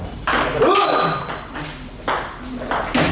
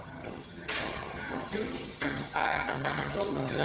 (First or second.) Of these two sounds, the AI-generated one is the second